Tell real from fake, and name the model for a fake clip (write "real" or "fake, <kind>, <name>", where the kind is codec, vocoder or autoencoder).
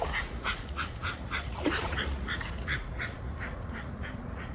fake, vocoder, Vocos